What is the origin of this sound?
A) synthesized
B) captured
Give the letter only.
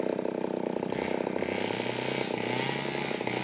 B